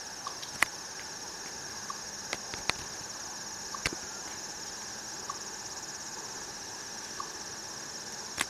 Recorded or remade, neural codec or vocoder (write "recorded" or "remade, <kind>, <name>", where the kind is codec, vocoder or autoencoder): recorded